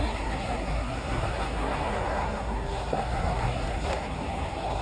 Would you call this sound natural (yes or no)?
no